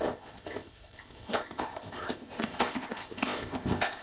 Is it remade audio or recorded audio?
remade